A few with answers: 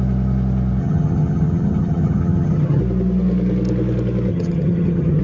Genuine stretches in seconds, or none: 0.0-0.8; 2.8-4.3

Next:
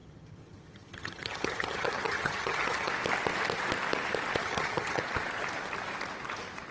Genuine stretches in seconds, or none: 2.9-4.4; 5.0-6.7

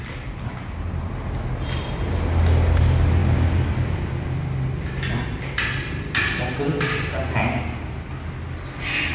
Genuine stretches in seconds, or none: 0.0-9.1

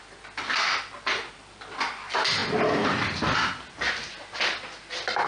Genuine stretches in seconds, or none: 0.0-5.3

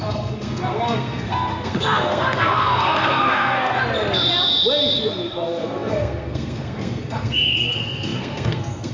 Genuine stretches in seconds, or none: 3.8-5.0